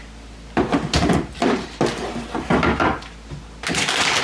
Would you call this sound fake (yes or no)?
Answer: no